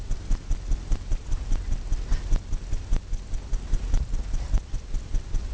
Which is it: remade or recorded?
recorded